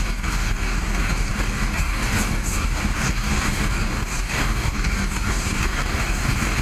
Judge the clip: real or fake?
fake